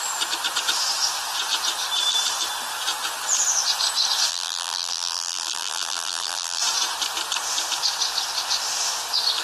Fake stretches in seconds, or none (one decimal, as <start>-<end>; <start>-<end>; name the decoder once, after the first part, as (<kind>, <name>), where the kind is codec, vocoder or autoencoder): 4.3-6.6 (vocoder, BigVGAN v2)